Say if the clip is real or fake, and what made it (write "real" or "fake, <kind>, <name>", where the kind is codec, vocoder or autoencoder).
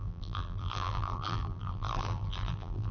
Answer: fake, vocoder, BigVGAN v2